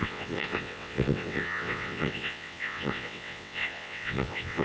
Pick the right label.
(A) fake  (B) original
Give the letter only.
A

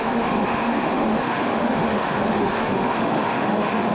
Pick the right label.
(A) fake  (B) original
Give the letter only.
A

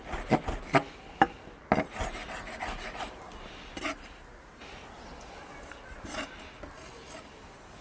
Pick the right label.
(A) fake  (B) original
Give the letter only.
B